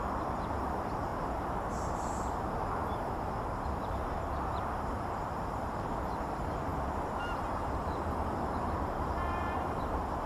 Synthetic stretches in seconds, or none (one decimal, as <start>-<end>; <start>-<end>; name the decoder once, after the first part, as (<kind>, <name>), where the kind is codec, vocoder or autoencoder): 0.0-1.1 (vocoder, BigVGAN v2); 2.7-10.3